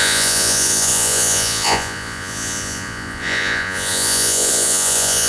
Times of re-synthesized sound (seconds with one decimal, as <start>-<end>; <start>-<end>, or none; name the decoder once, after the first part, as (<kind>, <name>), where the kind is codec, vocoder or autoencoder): 0.0-5.3 (vocoder, Vocos)